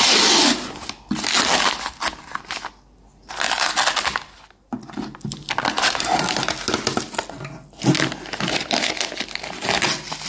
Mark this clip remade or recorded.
recorded